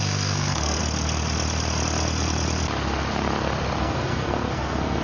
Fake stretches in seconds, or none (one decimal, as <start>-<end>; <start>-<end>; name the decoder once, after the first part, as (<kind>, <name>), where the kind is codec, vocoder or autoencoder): 0.0-0.8 (codec, SNAC); 3.8-5.0